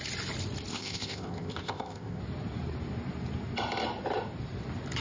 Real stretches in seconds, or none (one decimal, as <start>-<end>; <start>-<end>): 0.0-0.7; 2.2-5.0